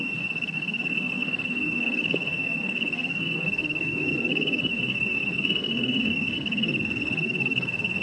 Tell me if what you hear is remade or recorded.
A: remade